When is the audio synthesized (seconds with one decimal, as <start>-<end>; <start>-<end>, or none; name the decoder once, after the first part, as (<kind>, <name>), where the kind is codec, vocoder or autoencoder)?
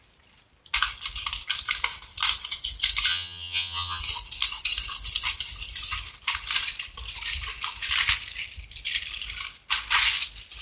3.1-4.0 (vocoder, HiFi-GAN)